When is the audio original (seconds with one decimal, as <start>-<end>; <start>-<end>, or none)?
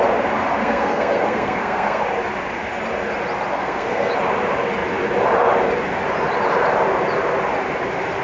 0.0-0.6; 2.0-3.5; 4.1-8.2